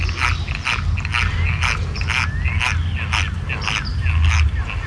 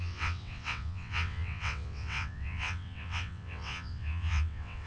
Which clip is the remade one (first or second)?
second